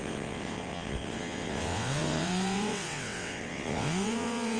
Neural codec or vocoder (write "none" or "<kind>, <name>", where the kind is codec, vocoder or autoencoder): vocoder, WaveNeXt